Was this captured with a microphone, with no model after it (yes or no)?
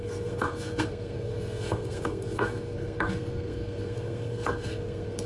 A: no